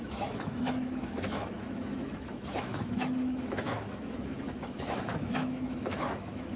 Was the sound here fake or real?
fake